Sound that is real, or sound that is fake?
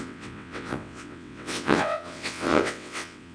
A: fake